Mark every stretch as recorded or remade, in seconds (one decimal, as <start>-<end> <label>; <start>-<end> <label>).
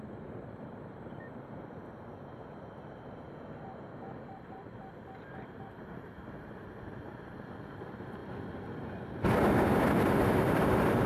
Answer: 0.0-8.2 remade; 8.2-9.8 recorded; 9.8-11.1 remade